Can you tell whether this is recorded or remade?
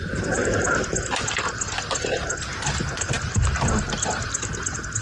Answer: recorded